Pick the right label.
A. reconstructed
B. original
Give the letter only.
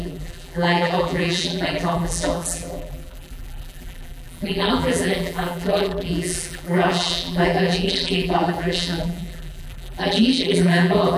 A